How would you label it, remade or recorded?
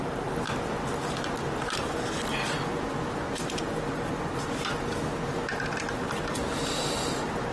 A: recorded